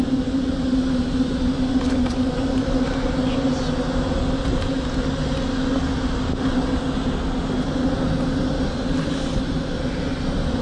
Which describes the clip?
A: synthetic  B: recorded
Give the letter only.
B